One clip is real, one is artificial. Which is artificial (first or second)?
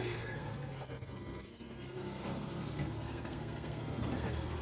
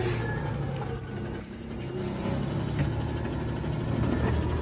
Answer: first